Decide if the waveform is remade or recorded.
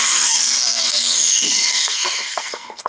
remade